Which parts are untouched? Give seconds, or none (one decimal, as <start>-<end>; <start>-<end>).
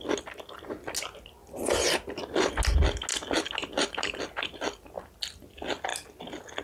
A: 0.0-3.1; 4.2-6.6